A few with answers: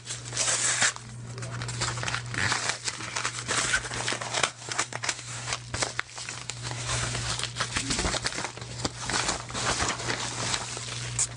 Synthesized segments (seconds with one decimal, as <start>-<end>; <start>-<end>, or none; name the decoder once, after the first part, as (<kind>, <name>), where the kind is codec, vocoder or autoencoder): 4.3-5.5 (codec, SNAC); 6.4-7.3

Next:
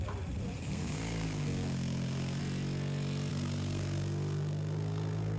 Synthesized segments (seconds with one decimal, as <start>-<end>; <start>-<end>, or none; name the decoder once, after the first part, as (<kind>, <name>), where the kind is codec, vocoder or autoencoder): 0.6-2.4 (codec, SNAC); 3.3-5.4

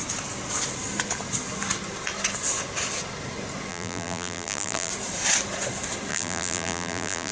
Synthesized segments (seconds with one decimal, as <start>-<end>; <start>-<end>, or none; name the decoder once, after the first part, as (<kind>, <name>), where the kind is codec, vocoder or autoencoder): 3.7-4.9 (vocoder, BigVGAN v2); 6.1-7.3